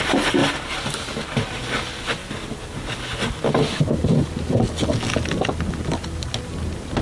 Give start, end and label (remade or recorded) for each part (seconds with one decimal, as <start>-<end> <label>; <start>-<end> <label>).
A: 0.0-0.4 recorded; 0.4-1.5 remade; 1.5-2.2 recorded; 2.2-4.5 remade; 4.5-7.0 recorded